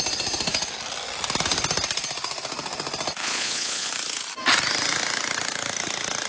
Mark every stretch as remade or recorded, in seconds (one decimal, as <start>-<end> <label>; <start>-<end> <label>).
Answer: 0.0-3.2 recorded; 3.2-3.9 remade; 3.9-6.3 recorded